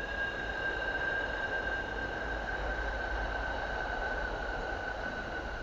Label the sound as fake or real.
real